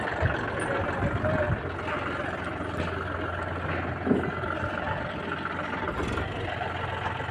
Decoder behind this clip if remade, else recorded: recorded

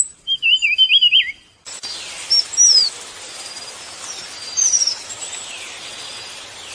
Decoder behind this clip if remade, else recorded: recorded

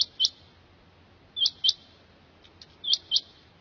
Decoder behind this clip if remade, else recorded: recorded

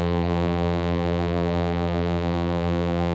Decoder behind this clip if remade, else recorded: remade, vocoder, BigVGAN v2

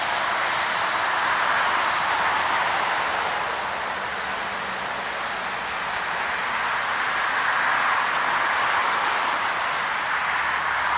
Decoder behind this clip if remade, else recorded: recorded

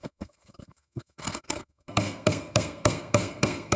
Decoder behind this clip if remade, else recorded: remade, codec, SNAC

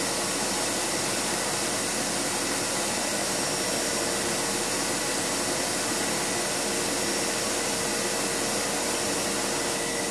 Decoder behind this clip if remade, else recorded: recorded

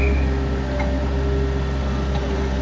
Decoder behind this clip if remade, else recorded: recorded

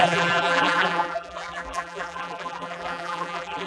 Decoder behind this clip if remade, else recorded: remade, vocoder, BigVGAN v2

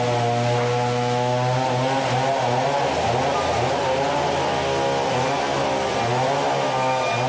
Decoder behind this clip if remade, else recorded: recorded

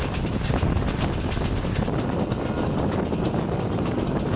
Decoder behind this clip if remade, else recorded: recorded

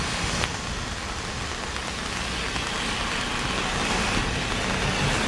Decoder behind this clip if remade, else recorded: recorded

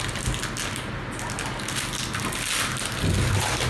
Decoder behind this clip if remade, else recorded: recorded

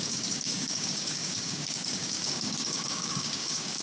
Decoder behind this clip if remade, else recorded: remade, codec, DAC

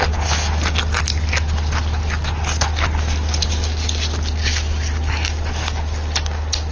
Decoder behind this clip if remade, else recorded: recorded